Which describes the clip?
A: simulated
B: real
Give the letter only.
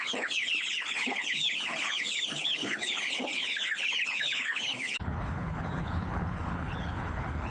A